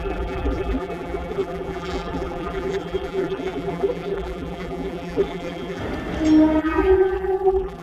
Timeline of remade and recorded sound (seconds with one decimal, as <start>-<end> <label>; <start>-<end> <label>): 0.0-5.8 remade; 5.8-6.6 recorded; 6.6-7.8 remade